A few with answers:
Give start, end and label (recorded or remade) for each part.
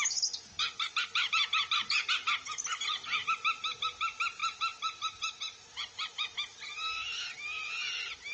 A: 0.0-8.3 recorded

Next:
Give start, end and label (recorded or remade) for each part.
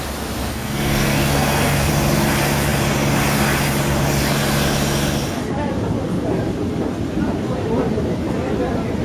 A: 0.0-0.4 recorded; 0.4-1.9 remade; 1.9-9.0 recorded